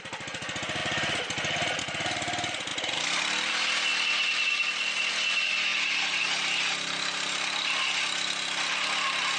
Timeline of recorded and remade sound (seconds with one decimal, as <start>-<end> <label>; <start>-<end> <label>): 0.0-2.7 recorded; 2.7-3.5 remade; 3.5-3.9 recorded; 3.9-5.1 remade; 5.1-5.7 recorded; 5.7-6.2 remade; 6.2-9.4 recorded